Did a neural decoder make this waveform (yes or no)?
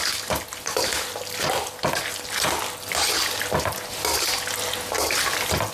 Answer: no